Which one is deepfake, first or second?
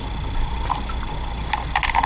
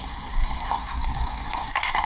second